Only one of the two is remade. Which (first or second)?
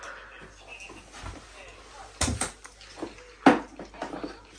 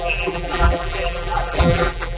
second